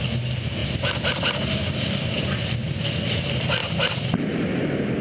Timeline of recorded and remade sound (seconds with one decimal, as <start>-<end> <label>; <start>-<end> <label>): 0.0-5.0 recorded